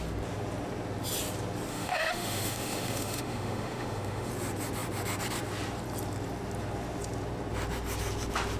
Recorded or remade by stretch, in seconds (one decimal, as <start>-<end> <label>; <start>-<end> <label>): 0.0-1.7 recorded; 1.7-4.3 remade; 4.3-8.6 recorded